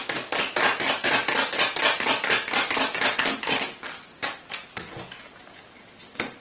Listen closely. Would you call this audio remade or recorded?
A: recorded